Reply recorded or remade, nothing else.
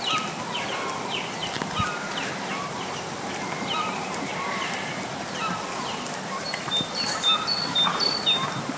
recorded